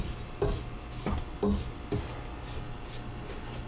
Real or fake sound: real